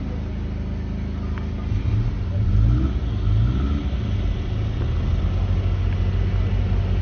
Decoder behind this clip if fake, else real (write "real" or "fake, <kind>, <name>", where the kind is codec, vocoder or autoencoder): real